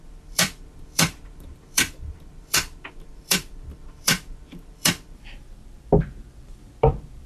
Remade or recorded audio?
remade